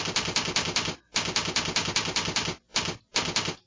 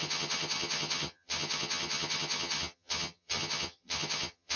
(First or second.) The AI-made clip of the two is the second